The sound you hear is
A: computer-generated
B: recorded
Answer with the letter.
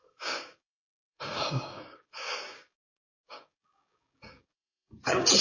A